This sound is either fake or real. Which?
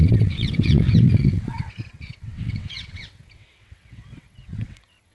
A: fake